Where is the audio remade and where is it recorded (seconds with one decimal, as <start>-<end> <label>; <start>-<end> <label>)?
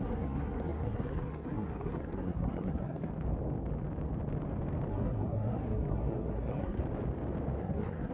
0.0-3.1 remade; 3.1-4.9 recorded; 4.9-6.8 remade; 6.8-7.6 recorded; 7.6-8.1 remade